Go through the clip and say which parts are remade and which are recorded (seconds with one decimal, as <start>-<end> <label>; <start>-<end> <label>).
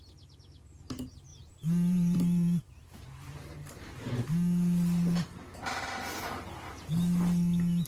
0.0-1.3 recorded; 1.3-4.2 remade; 4.2-7.9 recorded